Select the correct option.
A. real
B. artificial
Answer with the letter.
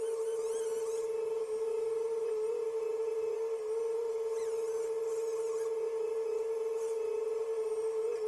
A